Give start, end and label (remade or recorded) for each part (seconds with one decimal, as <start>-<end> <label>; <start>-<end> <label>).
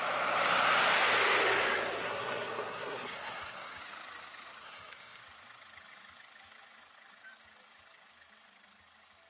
0.0-2.0 recorded; 2.0-3.8 remade; 3.8-4.6 recorded; 4.6-5.2 remade; 5.2-9.3 recorded